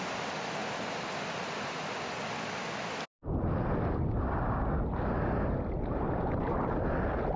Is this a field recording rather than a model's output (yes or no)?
yes